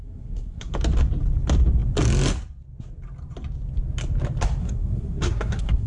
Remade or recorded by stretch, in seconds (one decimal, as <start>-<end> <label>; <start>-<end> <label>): 0.0-0.7 remade; 0.7-4.6 recorded; 4.6-5.9 remade